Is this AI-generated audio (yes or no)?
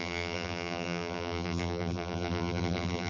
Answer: yes